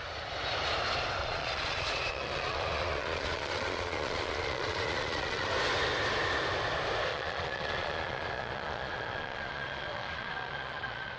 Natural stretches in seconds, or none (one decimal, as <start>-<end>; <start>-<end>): 0.0-1.2; 5.5-7.1